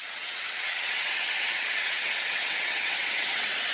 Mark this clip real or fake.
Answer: fake